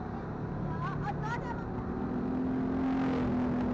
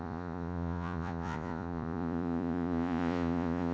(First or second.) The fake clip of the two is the second